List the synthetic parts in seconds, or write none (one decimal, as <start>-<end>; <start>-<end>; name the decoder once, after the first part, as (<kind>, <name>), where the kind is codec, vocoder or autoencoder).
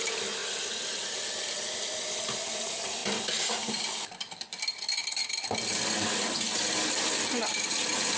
0.0-0.4 (vocoder, BigVGAN v2); 1.8-3.0; 4.1-8.2